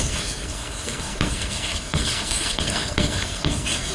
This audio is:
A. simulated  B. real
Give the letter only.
A